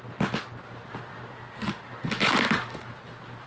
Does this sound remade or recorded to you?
recorded